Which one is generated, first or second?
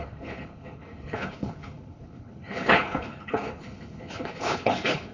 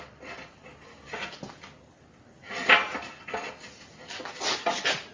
first